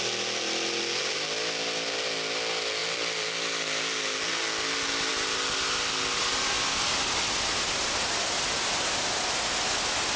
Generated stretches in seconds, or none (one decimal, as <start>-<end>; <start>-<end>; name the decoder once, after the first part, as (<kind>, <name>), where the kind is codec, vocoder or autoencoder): none